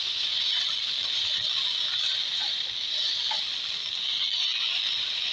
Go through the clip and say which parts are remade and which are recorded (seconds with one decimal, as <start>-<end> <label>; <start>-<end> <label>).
0.0-0.6 remade; 0.6-5.3 recorded